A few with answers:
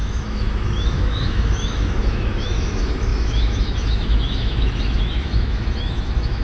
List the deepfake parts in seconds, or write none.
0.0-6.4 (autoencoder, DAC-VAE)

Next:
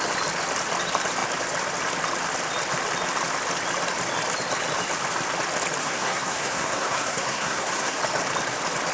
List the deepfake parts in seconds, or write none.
5.8-8.0 (codec, SNAC)

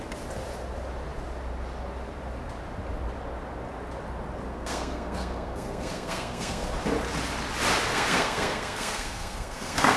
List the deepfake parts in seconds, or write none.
4.5-6.7 (codec, SNAC); 7.9-10.0

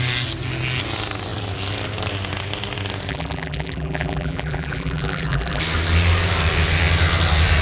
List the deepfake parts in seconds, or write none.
3.1-5.6 (vocoder, BigVGAN v2)

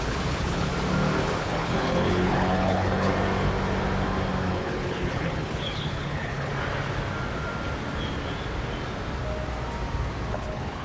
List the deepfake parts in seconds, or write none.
0.0-0.7 (codec, HILCodec); 1.4-3.1; 4.5-6.5; 10.3-10.8

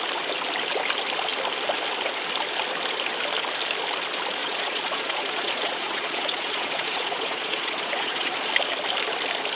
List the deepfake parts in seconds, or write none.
4.4-8.5 (vocoder, Vocos)